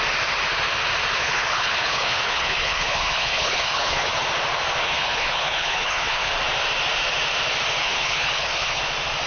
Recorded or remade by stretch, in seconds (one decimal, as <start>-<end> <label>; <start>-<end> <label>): 0.0-1.2 recorded; 1.2-4.1 remade; 4.1-4.8 recorded; 4.8-6.3 remade; 6.3-7.8 recorded; 7.8-8.8 remade; 8.8-9.3 recorded